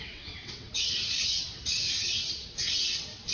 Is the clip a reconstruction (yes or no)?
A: yes